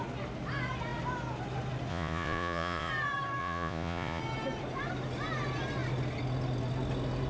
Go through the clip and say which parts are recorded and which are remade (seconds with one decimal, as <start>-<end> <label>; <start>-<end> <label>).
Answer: 0.0-1.9 recorded; 1.9-2.9 remade; 2.9-3.4 recorded; 3.4-4.2 remade; 4.2-7.3 recorded